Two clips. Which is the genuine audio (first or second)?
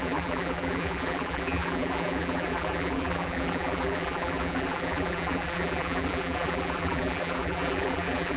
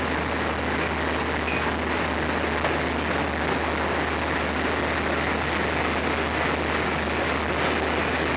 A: second